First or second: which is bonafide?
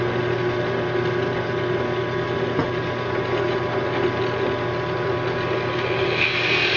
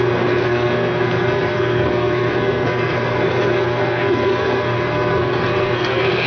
first